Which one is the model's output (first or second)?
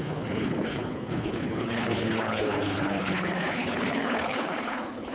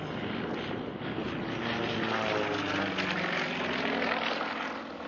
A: first